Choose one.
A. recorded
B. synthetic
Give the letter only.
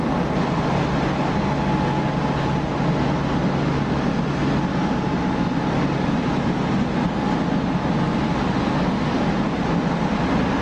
A